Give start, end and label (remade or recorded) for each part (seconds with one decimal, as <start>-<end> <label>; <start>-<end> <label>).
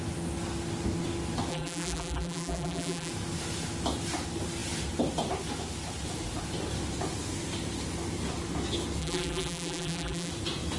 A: 0.0-1.5 recorded; 1.5-3.1 remade; 3.1-9.0 recorded; 9.0-10.3 remade; 10.3-10.8 recorded